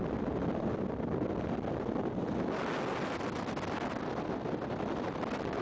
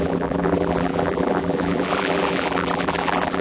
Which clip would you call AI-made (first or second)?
second